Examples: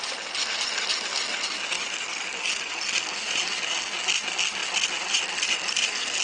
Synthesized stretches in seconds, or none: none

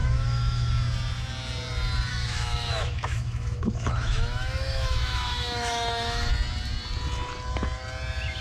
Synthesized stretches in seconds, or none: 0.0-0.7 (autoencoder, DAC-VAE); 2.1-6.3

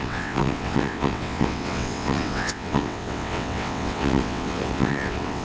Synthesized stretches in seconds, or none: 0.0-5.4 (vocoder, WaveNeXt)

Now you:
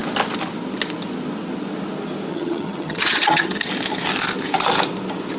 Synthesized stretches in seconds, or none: 2.3-3.7 (vocoder, HiFi-GAN)

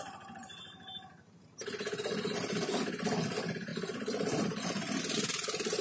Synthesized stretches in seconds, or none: none